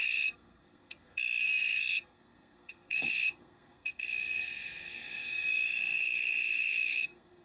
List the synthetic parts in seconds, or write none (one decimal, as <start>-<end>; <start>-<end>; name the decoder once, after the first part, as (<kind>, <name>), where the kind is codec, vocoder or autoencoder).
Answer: 0.0-7.4 (codec, SNAC)